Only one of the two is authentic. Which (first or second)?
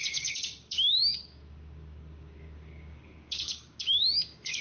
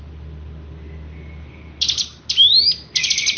second